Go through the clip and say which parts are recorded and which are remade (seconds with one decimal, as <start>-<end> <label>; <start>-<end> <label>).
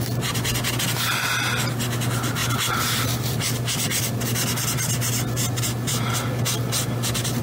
0.0-2.4 recorded; 2.4-4.0 remade; 4.0-7.4 recorded